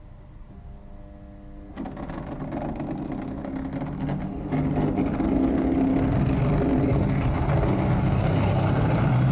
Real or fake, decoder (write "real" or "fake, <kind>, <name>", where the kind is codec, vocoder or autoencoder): real